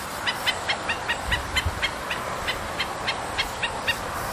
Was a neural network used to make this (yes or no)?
no